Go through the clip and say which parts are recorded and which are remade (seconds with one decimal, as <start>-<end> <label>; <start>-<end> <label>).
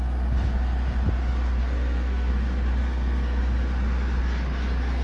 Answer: 0.0-1.6 recorded; 1.6-2.3 remade; 2.3-2.8 recorded; 2.8-3.4 remade; 3.4-5.0 recorded